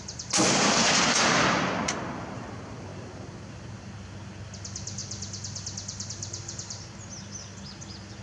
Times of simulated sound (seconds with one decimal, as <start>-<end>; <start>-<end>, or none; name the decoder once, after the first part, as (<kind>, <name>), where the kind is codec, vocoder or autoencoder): 0.0-8.2 (vocoder, BigVGAN v2)